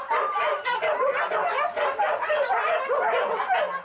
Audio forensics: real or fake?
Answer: real